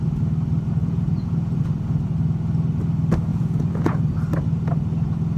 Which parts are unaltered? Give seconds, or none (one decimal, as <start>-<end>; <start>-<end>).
0.0-0.8; 1.6-3.3; 4.1-5.4